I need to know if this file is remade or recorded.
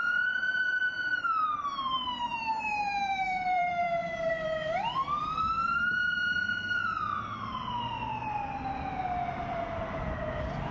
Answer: remade